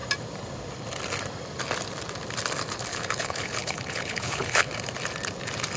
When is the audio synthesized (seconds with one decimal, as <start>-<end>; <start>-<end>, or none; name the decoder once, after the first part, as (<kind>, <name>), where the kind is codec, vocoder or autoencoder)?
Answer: 2.9-4.7 (codec, HILCodec)